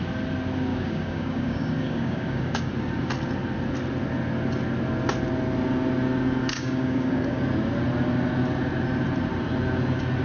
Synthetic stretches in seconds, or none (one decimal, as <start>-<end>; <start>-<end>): 0.7-2.7; 6.4-7.4